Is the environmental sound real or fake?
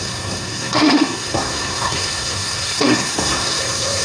fake